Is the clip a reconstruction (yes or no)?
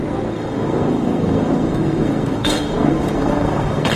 yes